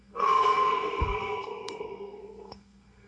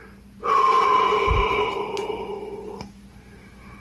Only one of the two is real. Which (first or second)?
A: second